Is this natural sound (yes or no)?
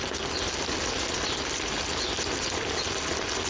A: yes